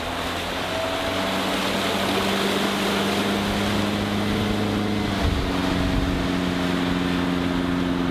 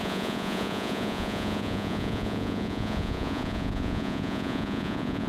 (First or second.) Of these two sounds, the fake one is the second